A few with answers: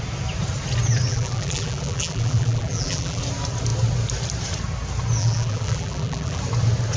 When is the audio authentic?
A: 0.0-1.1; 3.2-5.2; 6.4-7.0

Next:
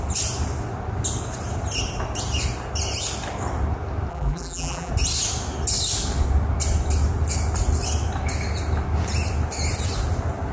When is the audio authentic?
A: 0.0-4.1; 4.9-10.5

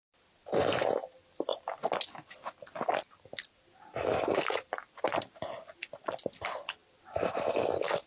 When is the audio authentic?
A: 0.0-8.1